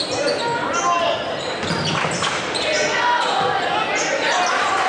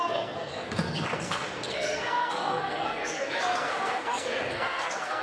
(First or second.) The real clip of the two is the first